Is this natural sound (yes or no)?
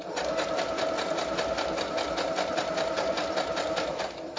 yes